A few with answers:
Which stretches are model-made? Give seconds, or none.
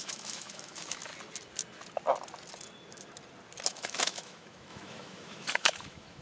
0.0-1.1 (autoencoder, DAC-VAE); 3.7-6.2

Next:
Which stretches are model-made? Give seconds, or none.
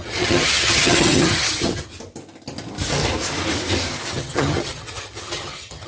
0.0-1.9 (vocoder, HiFi-GAN); 4.1-5.9